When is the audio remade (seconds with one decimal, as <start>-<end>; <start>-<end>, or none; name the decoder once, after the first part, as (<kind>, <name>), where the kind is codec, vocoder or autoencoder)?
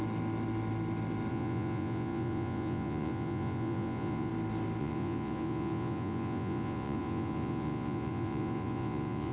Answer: 1.3-4.3 (vocoder, Vocos); 4.8-9.3